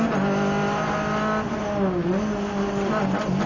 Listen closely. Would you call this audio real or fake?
real